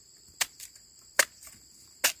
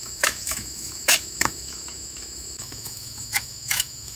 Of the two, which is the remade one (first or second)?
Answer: second